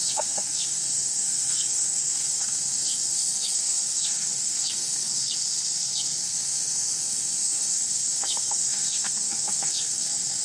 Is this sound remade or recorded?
remade